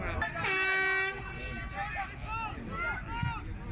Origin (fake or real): real